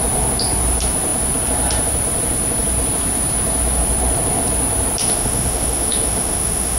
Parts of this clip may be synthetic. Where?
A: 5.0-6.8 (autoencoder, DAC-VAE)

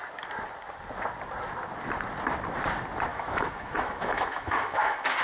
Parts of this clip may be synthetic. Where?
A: 3.1-5.2 (autoencoder, DAC-VAE)

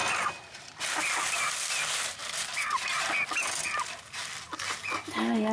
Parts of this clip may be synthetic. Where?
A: none

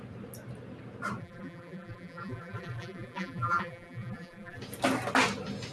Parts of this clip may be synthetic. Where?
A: 1.2-4.6 (vocoder, BigVGAN v2)

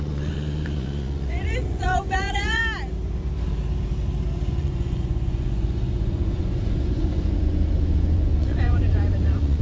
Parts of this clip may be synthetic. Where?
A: 0.0-2.6 (vocoder, Vocos); 4.5-9.6

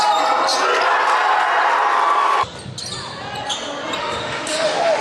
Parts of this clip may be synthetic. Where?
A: 4.0-5.0 (autoencoder, DAC-VAE)

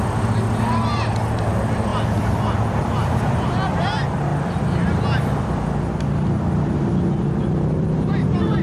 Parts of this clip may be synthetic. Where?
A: none

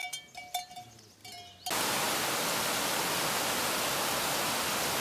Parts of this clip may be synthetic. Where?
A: none